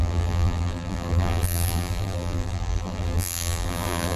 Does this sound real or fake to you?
fake